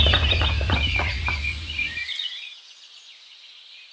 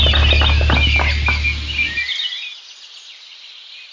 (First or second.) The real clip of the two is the second